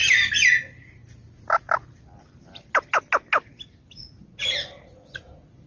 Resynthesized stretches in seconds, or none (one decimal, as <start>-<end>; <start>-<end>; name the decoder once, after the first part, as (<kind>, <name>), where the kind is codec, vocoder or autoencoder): 0.0-0.5 (vocoder, BigVGAN v2)